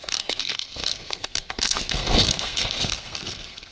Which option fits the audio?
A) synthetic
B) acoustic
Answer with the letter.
A